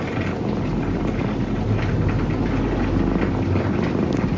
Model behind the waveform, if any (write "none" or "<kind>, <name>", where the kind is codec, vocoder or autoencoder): none